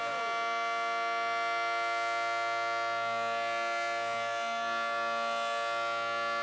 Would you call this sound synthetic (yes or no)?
no